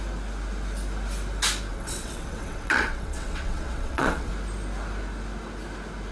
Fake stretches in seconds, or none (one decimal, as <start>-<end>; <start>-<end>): 1.7-4.3